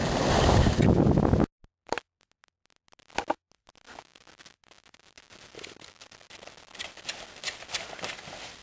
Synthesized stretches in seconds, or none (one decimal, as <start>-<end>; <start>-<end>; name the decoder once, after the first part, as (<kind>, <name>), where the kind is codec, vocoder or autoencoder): none

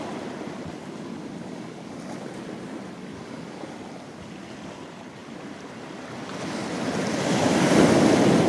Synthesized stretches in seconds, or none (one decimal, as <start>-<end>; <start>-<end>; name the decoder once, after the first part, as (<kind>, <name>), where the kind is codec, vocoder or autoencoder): 1.4-2.0 (codec, DAC); 3.0-3.7

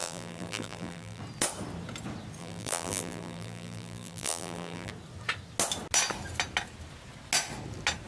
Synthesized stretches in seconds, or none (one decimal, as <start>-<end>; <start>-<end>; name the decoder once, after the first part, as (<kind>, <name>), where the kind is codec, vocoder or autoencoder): 0.0-1.2 (vocoder, BigVGAN v2); 2.4-4.9

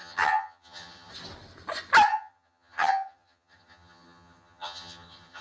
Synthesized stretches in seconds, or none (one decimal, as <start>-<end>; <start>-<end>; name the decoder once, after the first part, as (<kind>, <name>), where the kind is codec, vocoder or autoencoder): 0.0-1.1 (vocoder, HiFi-GAN); 2.1-5.4

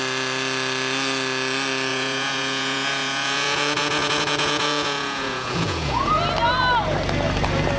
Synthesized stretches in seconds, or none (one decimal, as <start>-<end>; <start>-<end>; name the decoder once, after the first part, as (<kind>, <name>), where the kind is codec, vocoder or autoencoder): 1.9-6.1 (vocoder, Vocos)

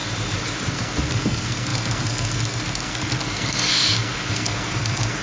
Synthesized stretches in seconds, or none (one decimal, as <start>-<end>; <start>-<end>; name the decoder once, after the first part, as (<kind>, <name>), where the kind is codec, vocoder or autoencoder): 0.7-5.2 (codec, SNAC)

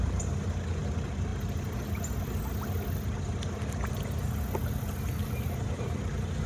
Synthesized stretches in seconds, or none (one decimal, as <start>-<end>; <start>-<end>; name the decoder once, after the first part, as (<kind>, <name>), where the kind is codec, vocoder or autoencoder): 0.0-1.3 (vocoder, BigVGAN v2); 5.2-6.5

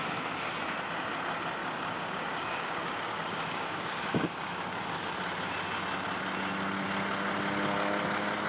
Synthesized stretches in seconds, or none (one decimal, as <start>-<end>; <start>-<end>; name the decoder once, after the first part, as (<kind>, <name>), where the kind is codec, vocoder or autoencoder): 1.6-5.1 (codec, DAC)